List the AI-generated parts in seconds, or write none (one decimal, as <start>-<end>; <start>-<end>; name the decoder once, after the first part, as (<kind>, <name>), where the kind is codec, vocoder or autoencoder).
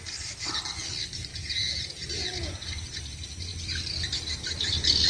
1.3-3.0 (vocoder, Vocos)